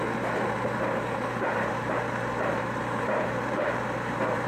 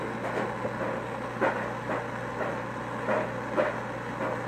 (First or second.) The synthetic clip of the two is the first